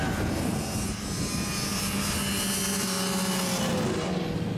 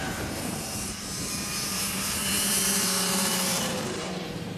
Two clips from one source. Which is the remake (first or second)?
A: second